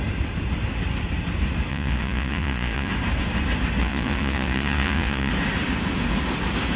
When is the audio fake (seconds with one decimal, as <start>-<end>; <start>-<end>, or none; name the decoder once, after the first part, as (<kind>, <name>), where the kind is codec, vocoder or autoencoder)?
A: 1.7-2.9 (vocoder, Vocos); 3.8-5.3